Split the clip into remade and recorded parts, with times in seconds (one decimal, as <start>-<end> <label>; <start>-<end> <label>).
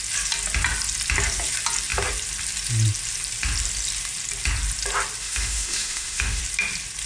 0.0-5.2 recorded; 5.2-6.4 remade; 6.4-7.1 recorded